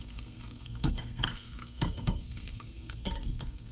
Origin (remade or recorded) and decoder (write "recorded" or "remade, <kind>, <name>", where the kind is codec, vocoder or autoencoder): remade, codec, SNAC